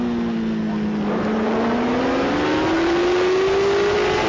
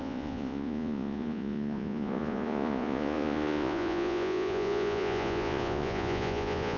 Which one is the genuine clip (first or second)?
first